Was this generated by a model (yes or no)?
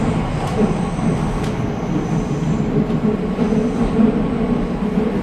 no